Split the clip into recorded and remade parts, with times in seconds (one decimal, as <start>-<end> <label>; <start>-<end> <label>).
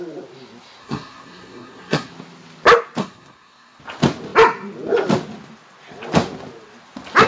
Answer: 0.0-0.8 recorded; 0.8-2.1 remade; 2.1-3.0 recorded; 3.0-3.8 remade; 3.8-7.3 recorded